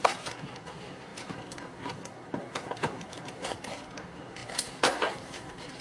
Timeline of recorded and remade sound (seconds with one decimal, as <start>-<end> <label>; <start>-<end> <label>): 0.0-5.8 remade